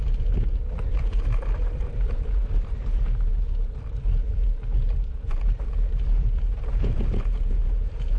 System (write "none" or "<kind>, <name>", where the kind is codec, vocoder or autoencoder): vocoder, BigVGAN v2